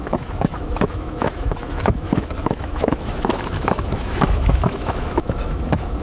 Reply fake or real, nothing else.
fake